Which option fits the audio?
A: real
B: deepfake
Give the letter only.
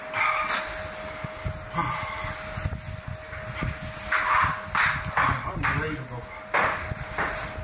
A